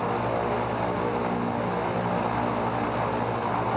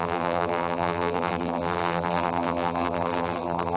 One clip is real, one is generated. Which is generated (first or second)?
second